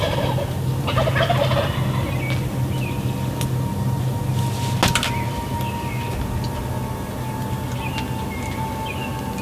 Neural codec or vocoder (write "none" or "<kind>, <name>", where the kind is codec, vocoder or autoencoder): none